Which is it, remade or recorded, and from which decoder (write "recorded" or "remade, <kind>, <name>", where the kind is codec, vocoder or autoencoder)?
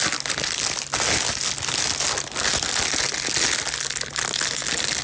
recorded